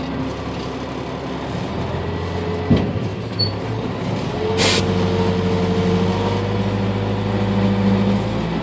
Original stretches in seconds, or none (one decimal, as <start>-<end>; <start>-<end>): 0.0-8.6

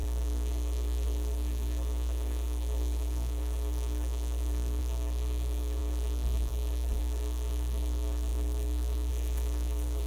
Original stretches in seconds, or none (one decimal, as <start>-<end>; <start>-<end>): none

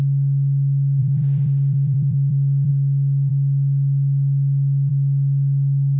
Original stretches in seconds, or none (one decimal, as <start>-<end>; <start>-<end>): 0.0-1.0; 2.7-6.0

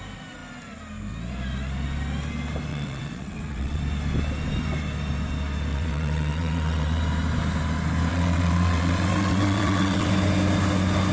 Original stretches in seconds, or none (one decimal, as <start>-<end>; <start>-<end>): 0.0-2.7; 3.8-5.7; 7.0-8.1; 10.1-11.1

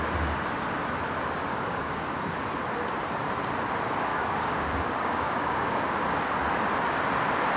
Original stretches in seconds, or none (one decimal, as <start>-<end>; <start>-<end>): 0.0-1.5; 2.1-4.1; 6.0-7.6

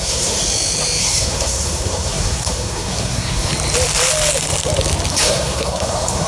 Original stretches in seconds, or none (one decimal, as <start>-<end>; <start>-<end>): 0.4-1.0; 3.5-5.1